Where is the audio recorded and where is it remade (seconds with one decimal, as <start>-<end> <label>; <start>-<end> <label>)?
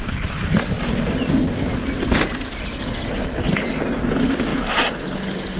0.0-5.6 recorded